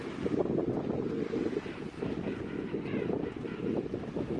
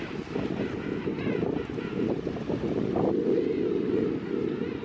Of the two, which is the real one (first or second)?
first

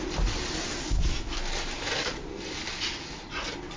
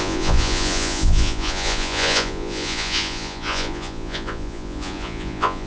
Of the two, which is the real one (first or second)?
first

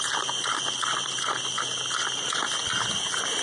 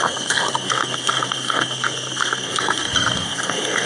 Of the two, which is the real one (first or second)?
first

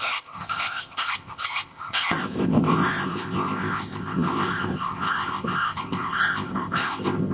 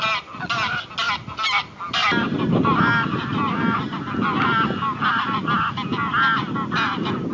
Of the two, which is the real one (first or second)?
second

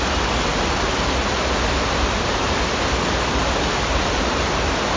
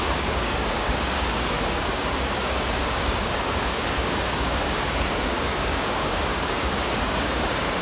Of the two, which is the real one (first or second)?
first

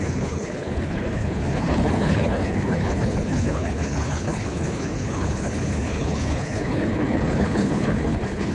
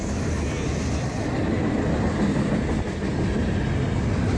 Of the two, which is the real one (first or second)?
second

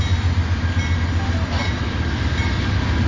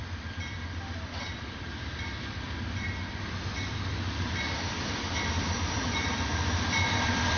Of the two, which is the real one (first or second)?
first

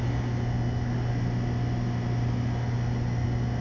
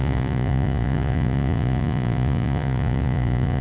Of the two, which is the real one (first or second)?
first